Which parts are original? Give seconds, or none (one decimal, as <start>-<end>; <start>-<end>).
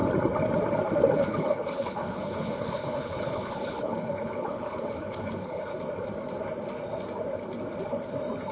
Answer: 0.0-1.1; 5.7-8.5